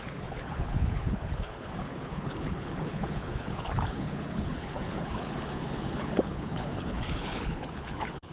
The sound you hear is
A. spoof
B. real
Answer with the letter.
A